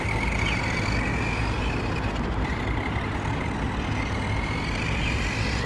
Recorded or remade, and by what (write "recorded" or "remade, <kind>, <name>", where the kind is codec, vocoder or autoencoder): recorded